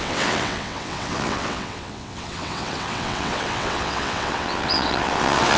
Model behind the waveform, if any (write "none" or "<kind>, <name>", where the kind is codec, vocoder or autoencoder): vocoder, WaveNeXt